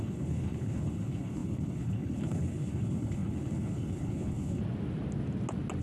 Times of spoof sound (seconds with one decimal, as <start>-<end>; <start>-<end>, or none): 0.0-4.6